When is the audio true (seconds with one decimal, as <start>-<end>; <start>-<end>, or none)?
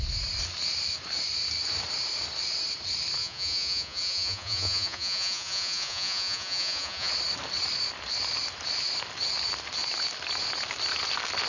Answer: 0.0-3.2; 7.1-11.5